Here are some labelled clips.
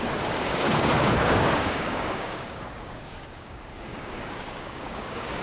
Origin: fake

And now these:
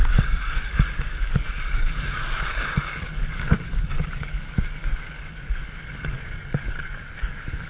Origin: fake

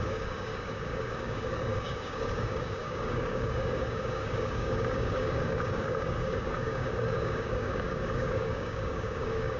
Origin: fake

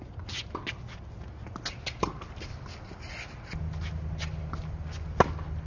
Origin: real